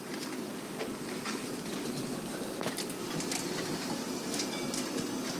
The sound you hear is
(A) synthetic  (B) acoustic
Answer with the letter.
B